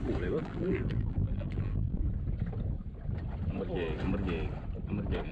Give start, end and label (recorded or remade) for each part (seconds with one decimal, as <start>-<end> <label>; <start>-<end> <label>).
0.0-0.4 recorded; 0.4-2.0 remade; 2.0-5.3 recorded